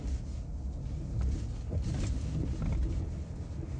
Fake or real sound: real